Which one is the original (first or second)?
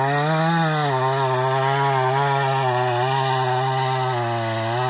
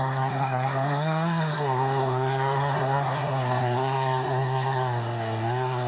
first